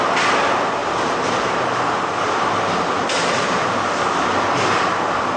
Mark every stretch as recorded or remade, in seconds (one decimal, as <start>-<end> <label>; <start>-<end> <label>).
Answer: 0.0-0.8 recorded; 0.8-4.0 remade; 4.0-5.4 recorded